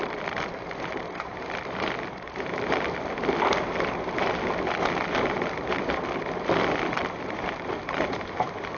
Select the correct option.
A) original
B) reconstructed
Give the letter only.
A